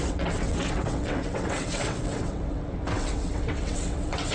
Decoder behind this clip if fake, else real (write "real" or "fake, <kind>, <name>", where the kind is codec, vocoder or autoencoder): fake, vocoder, WaveNeXt